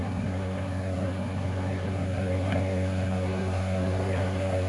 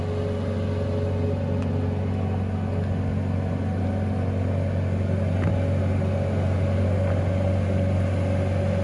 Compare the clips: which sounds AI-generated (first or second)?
first